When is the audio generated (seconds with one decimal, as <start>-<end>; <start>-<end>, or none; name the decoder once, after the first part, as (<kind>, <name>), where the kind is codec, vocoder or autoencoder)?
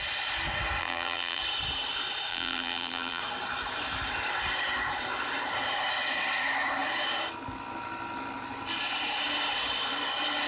0.8-1.4 (vocoder, BigVGAN v2); 2.3-3.2